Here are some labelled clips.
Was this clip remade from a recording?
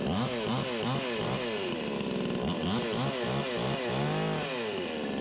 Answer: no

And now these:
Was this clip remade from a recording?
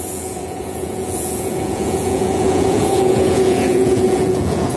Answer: yes